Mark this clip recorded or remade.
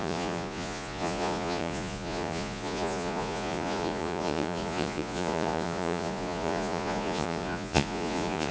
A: remade